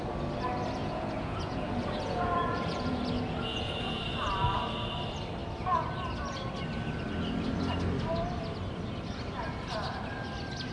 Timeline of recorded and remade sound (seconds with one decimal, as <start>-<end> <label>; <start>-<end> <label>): 0.0-0.8 recorded; 0.8-3.0 remade; 3.0-3.5 recorded; 3.5-4.0 remade; 4.0-10.7 recorded